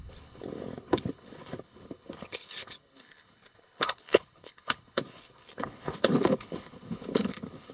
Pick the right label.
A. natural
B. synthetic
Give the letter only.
B